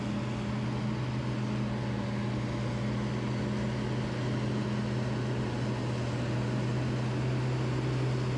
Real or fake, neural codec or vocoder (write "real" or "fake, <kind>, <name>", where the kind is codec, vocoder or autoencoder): real